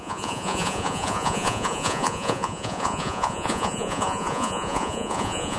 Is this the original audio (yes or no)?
no